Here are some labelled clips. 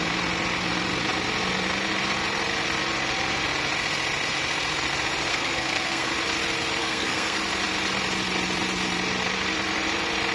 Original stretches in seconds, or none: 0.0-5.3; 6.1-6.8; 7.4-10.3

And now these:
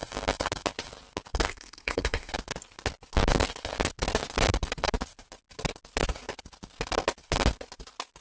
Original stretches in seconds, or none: 0.0-1.5; 2.3-8.2

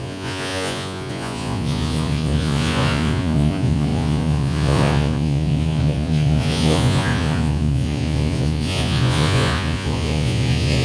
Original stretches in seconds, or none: none